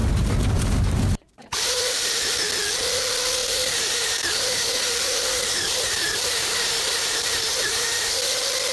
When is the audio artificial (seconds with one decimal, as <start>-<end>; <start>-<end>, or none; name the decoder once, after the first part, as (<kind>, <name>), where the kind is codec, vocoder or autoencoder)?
0.0-2.3 (vocoder, BigVGAN v2); 3.4-8.1

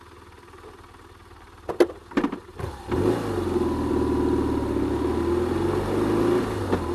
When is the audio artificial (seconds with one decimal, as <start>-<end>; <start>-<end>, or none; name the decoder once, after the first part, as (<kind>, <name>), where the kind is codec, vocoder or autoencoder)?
none